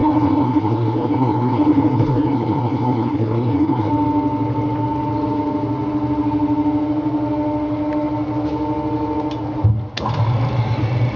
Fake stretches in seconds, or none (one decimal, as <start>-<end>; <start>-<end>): 0.0-3.9